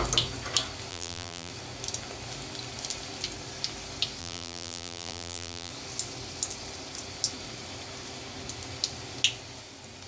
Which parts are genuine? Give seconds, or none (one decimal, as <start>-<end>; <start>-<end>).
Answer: 0.0-0.9; 1.5-4.2; 5.7-10.1